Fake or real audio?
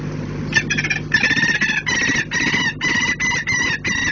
real